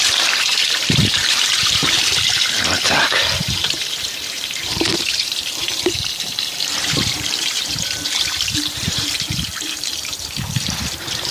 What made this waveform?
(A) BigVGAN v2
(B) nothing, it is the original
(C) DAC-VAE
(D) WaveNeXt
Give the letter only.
A